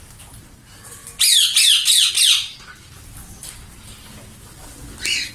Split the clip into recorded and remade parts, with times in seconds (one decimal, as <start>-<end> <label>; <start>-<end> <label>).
0.0-5.3 recorded